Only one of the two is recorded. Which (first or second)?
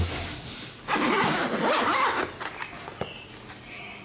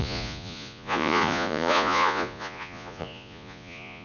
first